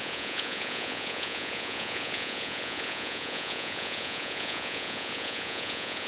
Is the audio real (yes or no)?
no